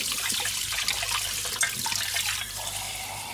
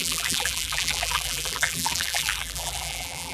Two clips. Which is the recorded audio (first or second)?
first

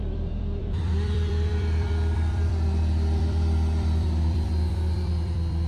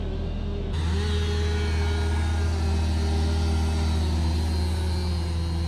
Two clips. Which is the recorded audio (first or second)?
second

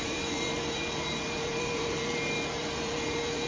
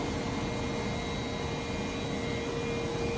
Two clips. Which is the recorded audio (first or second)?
second